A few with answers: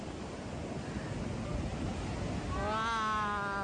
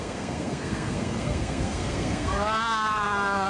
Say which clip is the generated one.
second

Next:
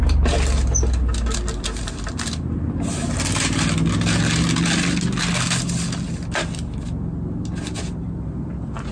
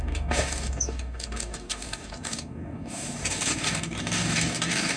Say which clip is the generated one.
second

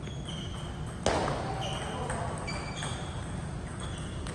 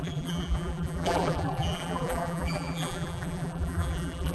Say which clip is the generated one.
second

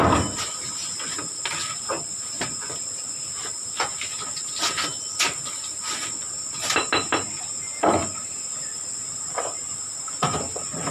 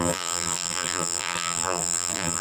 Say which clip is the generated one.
second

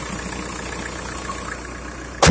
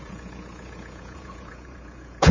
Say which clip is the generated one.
second